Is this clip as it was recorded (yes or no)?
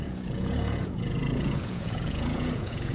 no